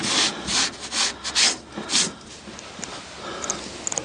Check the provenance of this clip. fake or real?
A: real